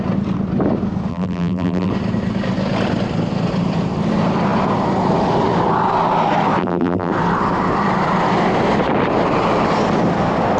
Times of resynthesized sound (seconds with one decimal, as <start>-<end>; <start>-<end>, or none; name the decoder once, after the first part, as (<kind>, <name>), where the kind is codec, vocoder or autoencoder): 1.1-1.9 (vocoder, BigVGAN v2); 6.6-7.1